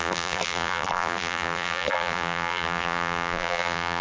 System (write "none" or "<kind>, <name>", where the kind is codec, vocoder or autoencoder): vocoder, BigVGAN v2